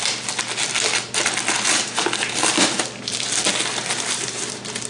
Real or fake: real